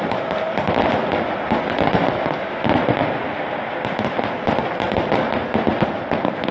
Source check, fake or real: real